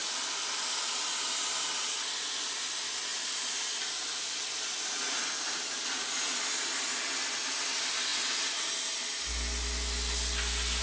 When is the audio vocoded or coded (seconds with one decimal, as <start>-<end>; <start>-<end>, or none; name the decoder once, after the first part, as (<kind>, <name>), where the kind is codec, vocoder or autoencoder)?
0.0-1.1 (vocoder, BigVGAN v2); 3.1-5.2